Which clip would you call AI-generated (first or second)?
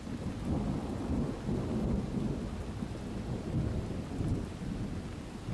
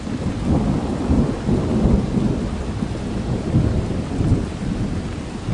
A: second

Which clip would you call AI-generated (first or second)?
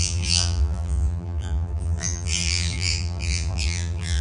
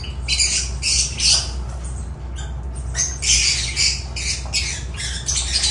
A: first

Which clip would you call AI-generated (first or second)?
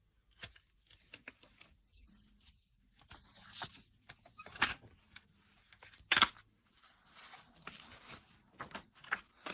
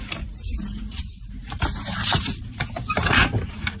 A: second